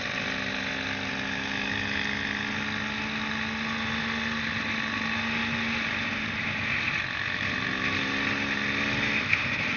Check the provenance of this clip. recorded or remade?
recorded